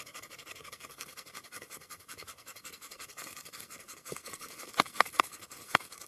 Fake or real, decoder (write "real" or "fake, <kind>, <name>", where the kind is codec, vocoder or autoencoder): fake, codec, SNAC